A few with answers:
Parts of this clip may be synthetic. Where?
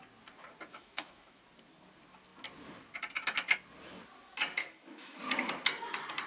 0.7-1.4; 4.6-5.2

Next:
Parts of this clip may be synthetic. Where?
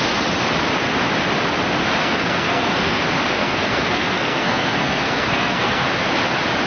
2.0-3.0; 3.4-5.9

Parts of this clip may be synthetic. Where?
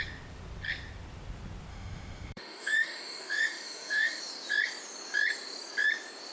1.7-4.2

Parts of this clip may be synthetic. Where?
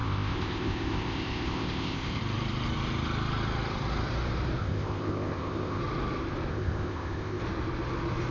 0.0-2.2; 4.6-5.8; 6.5-7.4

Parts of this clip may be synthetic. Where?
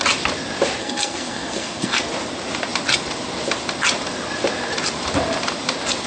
0.8-2.0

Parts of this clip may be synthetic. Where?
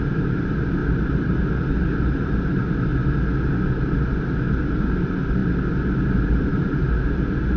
0.0-2.9; 4.7-5.4; 6.1-7.6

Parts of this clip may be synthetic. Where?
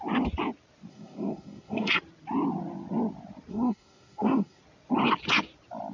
0.9-2.0; 3.5-4.6